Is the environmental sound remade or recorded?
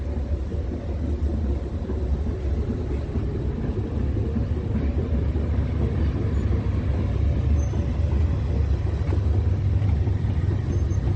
recorded